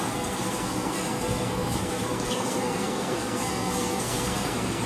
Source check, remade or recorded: remade